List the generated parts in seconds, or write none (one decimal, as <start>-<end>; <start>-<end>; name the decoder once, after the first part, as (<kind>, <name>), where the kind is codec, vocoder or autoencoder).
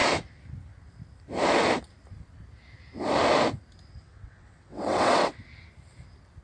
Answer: 3.9-5.4 (vocoder, WaveNeXt)